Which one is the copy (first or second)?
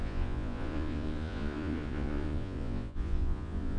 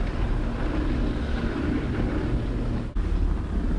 first